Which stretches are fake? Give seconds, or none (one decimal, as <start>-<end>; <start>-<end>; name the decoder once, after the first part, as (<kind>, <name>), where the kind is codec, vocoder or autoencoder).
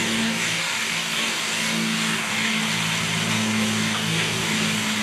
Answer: 0.0-2.6 (codec, DAC); 3.3-5.0